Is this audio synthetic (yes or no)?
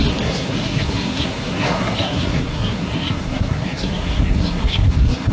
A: yes